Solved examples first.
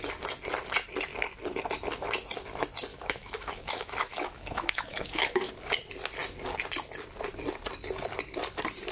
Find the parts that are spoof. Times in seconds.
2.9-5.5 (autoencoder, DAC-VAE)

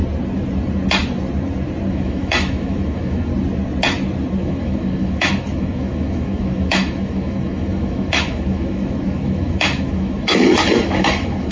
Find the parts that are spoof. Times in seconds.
1.9-3.3 (autoencoder, DAC-VAE); 4.4-11.5

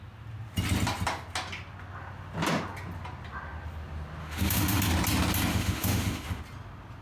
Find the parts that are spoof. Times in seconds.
4.2-4.8 (autoencoder, DAC-VAE); 5.5-6.4

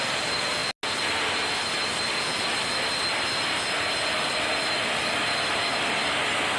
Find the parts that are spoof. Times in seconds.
none